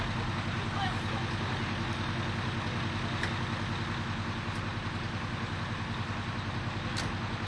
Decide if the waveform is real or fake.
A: real